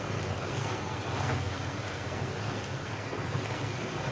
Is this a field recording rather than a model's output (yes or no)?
no